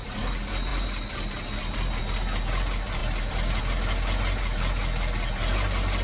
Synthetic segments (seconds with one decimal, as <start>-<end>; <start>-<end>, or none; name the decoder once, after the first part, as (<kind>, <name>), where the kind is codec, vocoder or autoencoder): none